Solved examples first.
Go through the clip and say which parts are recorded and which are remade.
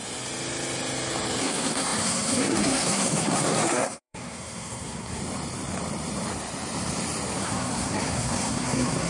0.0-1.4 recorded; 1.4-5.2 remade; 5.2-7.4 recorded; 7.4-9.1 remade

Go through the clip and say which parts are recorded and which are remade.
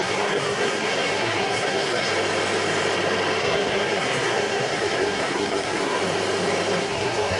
0.0-2.1 remade; 2.1-3.4 recorded; 3.4-6.0 remade; 6.0-6.8 recorded; 6.8-7.4 remade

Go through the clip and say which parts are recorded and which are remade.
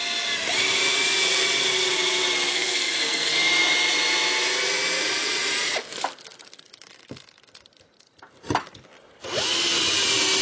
0.0-2.5 recorded; 2.5-3.3 remade; 3.3-10.4 recorded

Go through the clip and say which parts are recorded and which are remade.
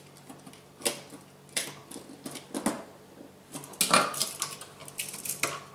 0.0-5.7 recorded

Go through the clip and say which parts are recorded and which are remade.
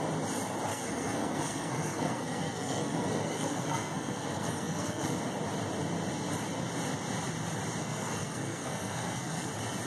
0.0-0.7 recorded; 0.7-5.2 remade; 5.2-7.8 recorded; 7.8-9.5 remade; 9.5-9.9 recorded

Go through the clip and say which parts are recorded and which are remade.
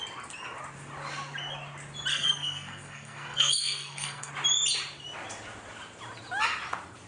0.0-2.1 recorded; 2.1-4.3 remade; 4.3-7.1 recorded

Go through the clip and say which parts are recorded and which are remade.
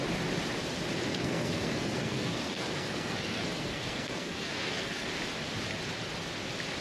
0.0-1.1 recorded; 1.1-5.1 remade; 5.1-6.8 recorded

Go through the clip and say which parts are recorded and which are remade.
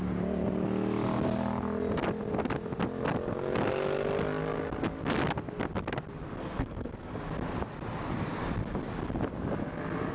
0.0-6.4 recorded; 6.4-7.1 remade; 7.1-10.1 recorded